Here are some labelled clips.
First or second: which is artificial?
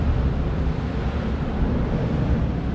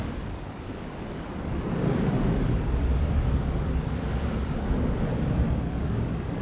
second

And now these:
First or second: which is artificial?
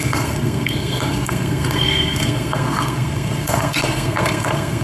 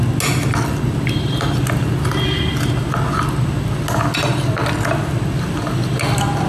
first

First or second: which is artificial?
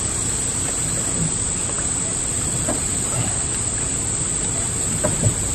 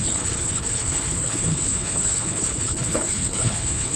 second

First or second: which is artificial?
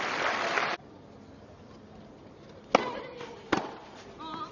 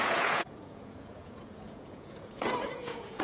second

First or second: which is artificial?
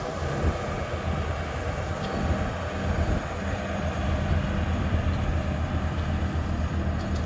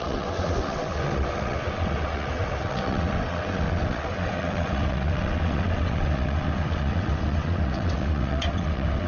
second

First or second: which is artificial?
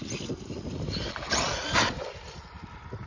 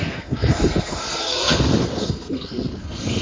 second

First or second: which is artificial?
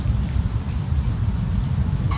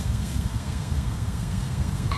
second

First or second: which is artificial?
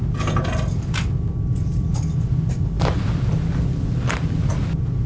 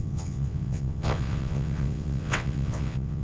second